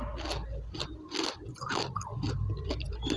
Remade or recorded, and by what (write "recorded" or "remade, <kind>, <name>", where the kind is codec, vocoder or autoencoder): recorded